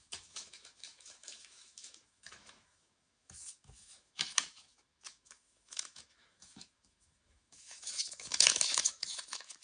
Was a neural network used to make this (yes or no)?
yes